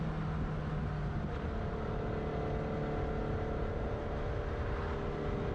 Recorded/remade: recorded